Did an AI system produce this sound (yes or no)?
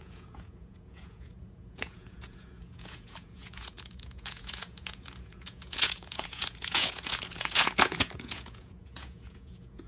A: yes